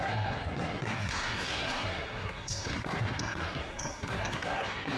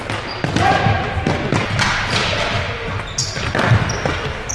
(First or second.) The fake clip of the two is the first